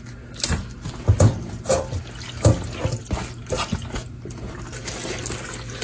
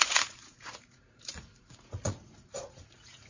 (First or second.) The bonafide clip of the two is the first